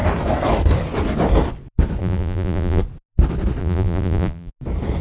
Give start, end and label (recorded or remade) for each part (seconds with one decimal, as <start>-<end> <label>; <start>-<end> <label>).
0.0-2.0 recorded; 2.0-2.8 remade; 2.8-3.6 recorded; 3.6-4.5 remade; 4.5-5.0 recorded